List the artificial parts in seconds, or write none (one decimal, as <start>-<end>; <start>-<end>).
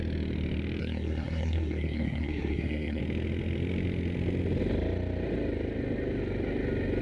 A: 0.8-3.0